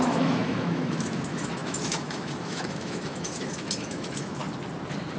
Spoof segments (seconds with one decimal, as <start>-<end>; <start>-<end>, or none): 0.0-4.4